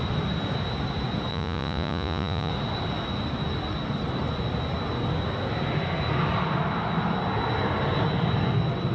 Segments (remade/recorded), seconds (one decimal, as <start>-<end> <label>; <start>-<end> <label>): 0.0-1.3 recorded; 1.3-2.5 remade; 2.5-8.9 recorded